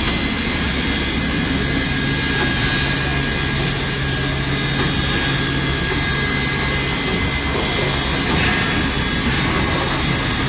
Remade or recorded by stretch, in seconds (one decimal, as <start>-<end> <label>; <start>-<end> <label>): 0.0-10.5 recorded